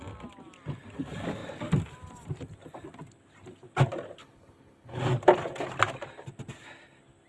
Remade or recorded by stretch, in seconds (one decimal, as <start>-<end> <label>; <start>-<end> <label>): 0.0-4.2 recorded; 4.2-5.0 remade; 5.0-7.3 recorded